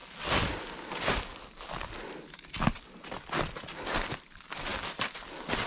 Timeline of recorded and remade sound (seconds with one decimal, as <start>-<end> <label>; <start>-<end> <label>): 0.0-5.7 recorded